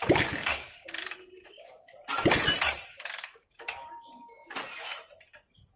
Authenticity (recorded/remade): recorded